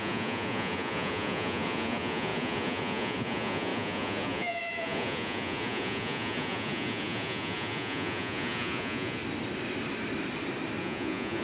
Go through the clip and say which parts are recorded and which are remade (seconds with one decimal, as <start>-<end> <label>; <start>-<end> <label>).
0.0-9.2 remade; 9.2-10.8 recorded; 10.8-11.4 remade